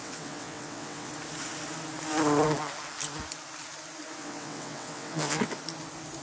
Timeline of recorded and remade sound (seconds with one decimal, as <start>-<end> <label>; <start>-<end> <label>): 0.0-1.1 remade; 1.1-4.2 recorded; 4.2-5.6 remade; 5.6-6.2 recorded